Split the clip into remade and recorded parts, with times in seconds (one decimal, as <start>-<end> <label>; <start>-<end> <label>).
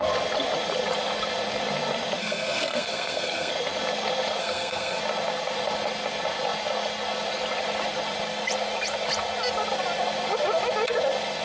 0.0-2.2 recorded; 2.2-3.5 remade; 3.5-4.4 recorded; 4.4-5.0 remade; 5.0-11.4 recorded